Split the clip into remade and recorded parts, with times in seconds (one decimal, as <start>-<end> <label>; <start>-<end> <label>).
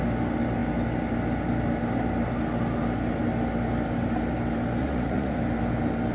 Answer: 0.0-4.8 recorded; 4.8-5.4 remade; 5.4-6.1 recorded